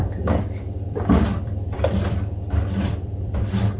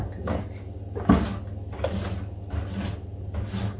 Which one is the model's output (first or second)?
first